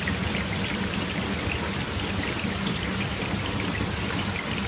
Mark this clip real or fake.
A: real